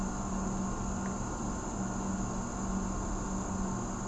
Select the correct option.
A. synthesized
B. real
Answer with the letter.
B